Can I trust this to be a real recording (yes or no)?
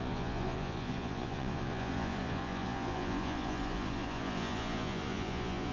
no